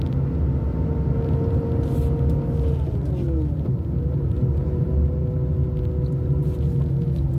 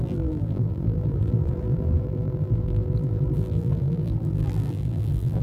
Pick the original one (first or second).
first